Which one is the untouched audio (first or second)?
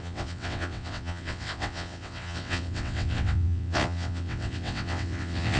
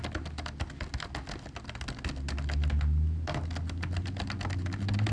second